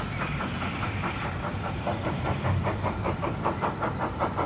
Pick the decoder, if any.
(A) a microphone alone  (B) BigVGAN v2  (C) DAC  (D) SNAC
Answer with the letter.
A